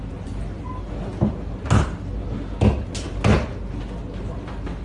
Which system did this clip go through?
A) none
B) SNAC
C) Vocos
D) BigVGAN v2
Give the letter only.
A